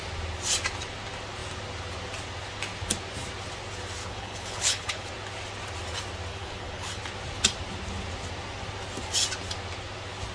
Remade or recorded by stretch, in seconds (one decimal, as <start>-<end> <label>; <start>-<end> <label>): 0.0-4.0 recorded; 4.0-5.1 remade; 5.1-6.3 recorded; 6.3-7.0 remade; 7.0-10.3 recorded